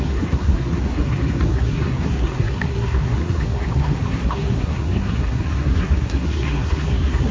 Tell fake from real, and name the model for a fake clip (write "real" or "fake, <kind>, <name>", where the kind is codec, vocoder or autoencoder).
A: fake, codec, SNAC